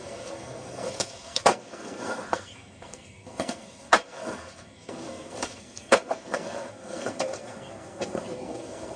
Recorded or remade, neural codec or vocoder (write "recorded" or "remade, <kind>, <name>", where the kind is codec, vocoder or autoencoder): remade, codec, SNAC